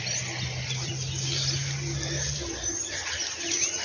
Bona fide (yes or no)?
yes